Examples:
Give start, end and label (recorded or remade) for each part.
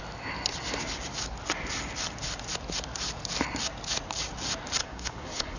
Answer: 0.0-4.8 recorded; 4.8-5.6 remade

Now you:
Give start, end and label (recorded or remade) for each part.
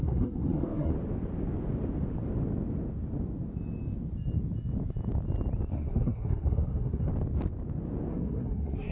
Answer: 0.0-0.9 remade; 0.9-5.7 recorded; 5.7-7.1 remade; 7.1-8.1 recorded; 8.1-8.9 remade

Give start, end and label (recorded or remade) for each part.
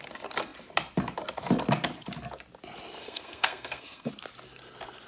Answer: 0.0-3.0 recorded; 3.0-4.1 remade; 4.1-5.1 recorded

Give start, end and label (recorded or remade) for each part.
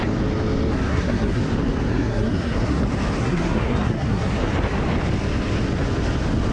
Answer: 0.0-0.9 recorded; 0.9-1.4 remade; 1.4-1.9 recorded; 1.9-2.8 remade; 2.8-3.2 recorded; 3.2-4.5 remade; 4.5-6.5 recorded